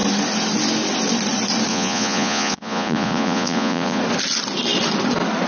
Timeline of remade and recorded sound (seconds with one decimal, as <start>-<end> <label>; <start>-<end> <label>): 0.0-1.7 recorded; 1.7-4.0 remade; 4.0-5.5 recorded